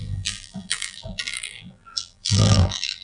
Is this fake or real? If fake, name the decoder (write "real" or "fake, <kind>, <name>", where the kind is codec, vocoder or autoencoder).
fake, vocoder, BigVGAN v2